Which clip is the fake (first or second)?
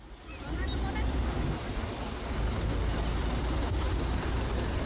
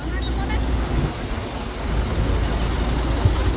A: first